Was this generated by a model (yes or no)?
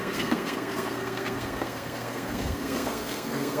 yes